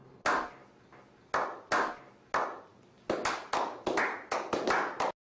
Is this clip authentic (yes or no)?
yes